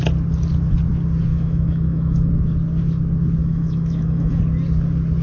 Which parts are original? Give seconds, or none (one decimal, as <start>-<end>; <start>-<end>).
0.0-1.3; 2.3-3.4; 4.4-5.2